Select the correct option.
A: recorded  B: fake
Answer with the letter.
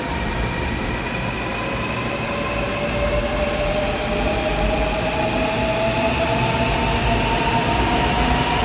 A